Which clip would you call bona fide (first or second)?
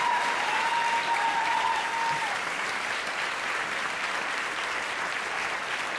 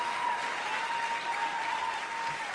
second